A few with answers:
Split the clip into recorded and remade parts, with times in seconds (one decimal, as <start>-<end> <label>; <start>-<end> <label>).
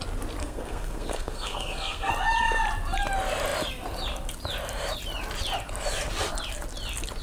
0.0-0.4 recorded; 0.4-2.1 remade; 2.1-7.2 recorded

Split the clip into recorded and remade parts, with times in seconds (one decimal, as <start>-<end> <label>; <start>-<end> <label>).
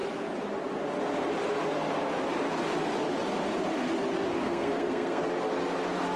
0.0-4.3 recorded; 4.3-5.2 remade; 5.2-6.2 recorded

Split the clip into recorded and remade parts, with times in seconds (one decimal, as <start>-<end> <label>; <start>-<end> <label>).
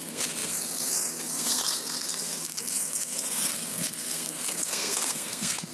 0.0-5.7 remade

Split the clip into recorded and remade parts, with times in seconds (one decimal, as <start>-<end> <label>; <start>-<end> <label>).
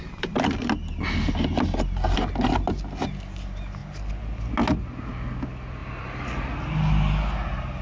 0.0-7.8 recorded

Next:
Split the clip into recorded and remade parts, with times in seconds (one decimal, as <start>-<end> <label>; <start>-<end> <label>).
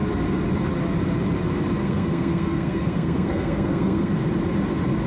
0.0-1.8 recorded; 1.8-4.1 remade; 4.1-5.1 recorded